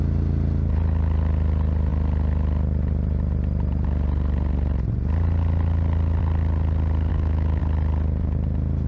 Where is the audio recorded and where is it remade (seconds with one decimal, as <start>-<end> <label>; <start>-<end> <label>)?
0.0-7.1 recorded; 7.1-7.6 remade; 7.6-8.9 recorded